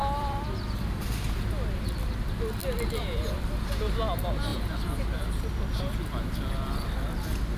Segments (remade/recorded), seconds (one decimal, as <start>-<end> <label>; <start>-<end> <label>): 0.0-1.4 remade; 1.4-2.6 recorded; 2.6-3.7 remade; 3.7-4.5 recorded; 4.5-5.8 remade; 5.8-7.6 recorded